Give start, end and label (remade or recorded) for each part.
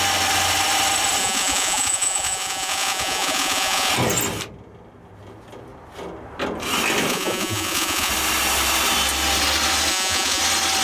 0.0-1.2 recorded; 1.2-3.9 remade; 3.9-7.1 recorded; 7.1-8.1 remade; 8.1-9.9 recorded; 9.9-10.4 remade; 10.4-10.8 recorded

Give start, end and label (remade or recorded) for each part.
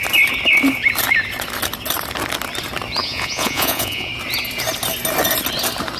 0.0-3.0 recorded; 3.0-4.1 remade; 4.1-6.0 recorded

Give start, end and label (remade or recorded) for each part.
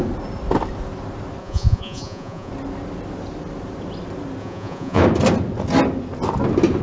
0.0-1.4 recorded; 1.4-2.5 remade; 2.5-4.4 recorded; 4.4-5.0 remade; 5.0-6.8 recorded